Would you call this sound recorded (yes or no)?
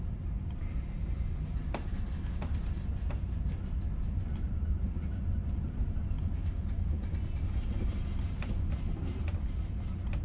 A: yes